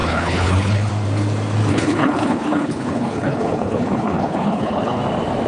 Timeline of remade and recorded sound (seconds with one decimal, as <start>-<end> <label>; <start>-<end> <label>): 0.0-0.9 remade; 0.9-1.7 recorded; 1.7-5.0 remade; 5.0-5.5 recorded